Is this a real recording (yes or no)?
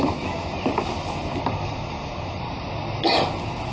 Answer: yes